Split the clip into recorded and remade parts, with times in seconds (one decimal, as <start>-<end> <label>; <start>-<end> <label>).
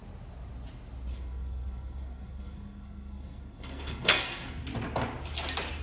0.0-1.1 recorded; 1.1-4.6 remade; 4.6-5.8 recorded